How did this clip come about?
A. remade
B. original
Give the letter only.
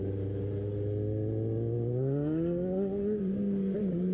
B